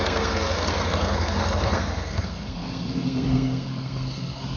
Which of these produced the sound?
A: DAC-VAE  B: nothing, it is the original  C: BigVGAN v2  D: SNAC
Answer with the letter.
D